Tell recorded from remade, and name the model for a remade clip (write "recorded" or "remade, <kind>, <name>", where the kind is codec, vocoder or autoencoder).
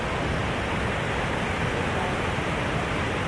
recorded